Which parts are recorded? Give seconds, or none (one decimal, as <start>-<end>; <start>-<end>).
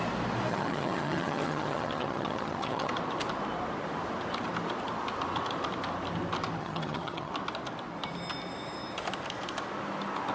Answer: 0.0-0.5; 2.9-6.6; 7.3-10.3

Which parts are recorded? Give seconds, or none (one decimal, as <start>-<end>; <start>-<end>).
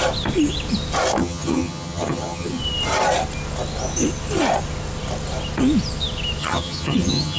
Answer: 0.0-1.2; 2.6-6.4